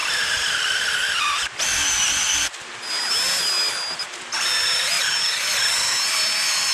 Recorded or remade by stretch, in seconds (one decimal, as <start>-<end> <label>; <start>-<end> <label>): 0.0-0.9 remade; 0.9-6.7 recorded